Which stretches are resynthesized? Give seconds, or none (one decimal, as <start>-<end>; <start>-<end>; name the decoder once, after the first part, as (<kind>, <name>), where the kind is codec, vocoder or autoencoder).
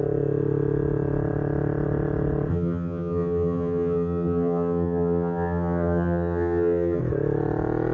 2.5-7.0 (vocoder, HiFi-GAN)